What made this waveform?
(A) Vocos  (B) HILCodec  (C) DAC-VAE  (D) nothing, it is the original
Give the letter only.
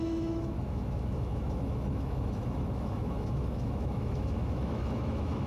C